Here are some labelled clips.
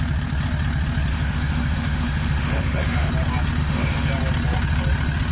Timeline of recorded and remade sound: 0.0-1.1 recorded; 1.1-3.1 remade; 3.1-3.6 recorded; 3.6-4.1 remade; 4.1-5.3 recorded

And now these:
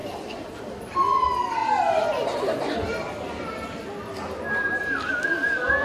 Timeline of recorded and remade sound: 0.0-5.8 recorded

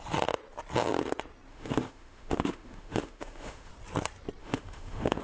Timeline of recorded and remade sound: 0.0-1.5 recorded; 1.5-3.7 remade; 3.7-4.4 recorded; 4.4-5.2 remade